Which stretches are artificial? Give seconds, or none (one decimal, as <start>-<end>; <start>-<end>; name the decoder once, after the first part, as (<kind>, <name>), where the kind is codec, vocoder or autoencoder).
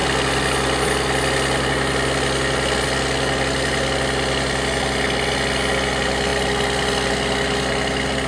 none